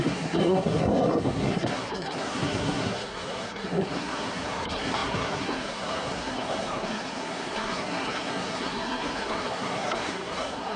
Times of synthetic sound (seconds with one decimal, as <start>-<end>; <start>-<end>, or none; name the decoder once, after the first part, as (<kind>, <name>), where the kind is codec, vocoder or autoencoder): 0.0-10.8 (codec, SNAC)